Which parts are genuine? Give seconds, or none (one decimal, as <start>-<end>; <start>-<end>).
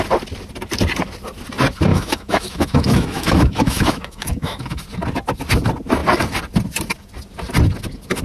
0.0-1.9; 4.8-8.2